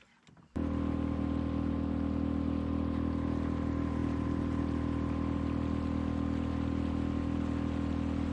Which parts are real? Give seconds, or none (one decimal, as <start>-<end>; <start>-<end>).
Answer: 0.0-4.0; 4.6-8.3